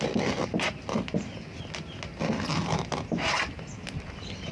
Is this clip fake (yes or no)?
no